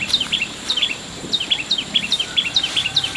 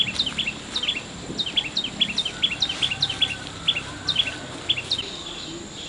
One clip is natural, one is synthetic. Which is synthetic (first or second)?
first